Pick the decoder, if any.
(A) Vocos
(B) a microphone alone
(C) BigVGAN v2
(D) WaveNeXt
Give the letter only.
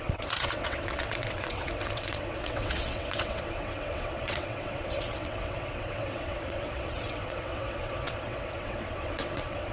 D